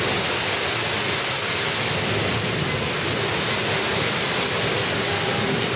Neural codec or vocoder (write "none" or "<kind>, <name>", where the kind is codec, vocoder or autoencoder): none